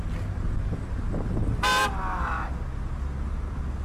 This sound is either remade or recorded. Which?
recorded